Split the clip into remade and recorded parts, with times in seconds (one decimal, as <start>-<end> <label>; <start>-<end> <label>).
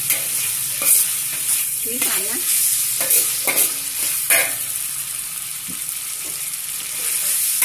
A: 0.0-1.2 recorded; 1.2-2.3 remade; 2.3-5.5 recorded; 5.5-7.0 remade; 7.0-7.6 recorded